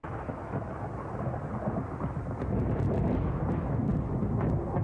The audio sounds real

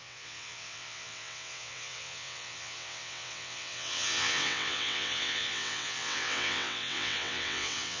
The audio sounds fake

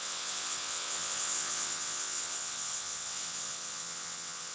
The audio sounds fake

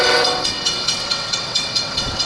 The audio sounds fake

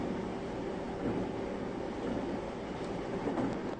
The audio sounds real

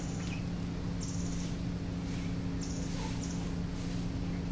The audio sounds real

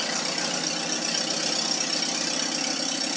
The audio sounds real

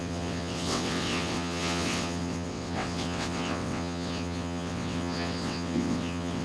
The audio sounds fake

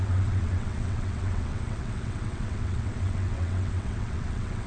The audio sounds fake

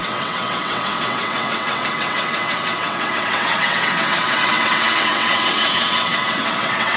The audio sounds fake